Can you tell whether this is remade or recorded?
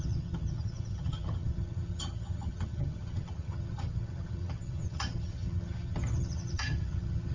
remade